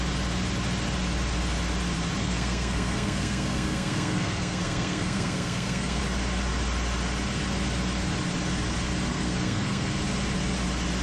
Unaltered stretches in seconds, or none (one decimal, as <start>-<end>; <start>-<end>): 0.0-2.2; 6.0-9.1; 9.9-11.0